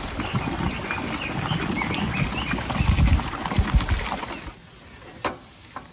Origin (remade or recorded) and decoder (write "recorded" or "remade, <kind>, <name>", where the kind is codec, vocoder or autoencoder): recorded